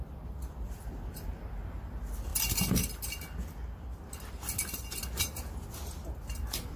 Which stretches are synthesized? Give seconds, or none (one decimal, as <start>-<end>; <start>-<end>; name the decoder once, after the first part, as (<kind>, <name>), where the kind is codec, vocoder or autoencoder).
none